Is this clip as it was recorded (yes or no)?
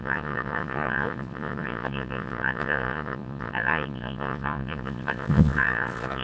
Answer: no